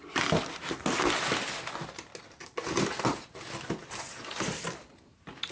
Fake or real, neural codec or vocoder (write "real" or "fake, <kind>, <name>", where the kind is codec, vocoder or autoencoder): real